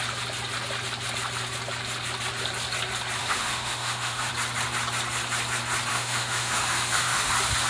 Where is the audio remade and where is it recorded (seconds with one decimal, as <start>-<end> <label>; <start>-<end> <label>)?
0.0-3.2 recorded; 3.2-4.3 remade; 4.3-5.9 recorded; 5.9-7.3 remade; 7.3-7.7 recorded